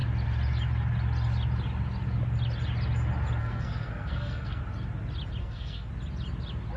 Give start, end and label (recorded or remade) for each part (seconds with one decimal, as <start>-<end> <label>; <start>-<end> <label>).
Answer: 0.0-3.4 recorded; 3.4-4.6 remade; 4.6-5.4 recorded; 5.4-5.9 remade; 5.9-6.8 recorded